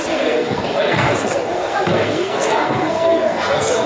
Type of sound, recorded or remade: remade